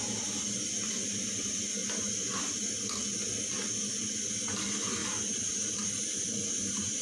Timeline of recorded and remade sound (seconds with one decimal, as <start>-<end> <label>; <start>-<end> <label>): 0.0-5.0 recorded; 5.0-7.0 remade